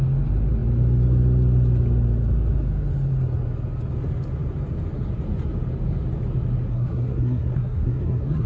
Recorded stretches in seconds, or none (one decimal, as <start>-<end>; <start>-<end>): 0.0-6.7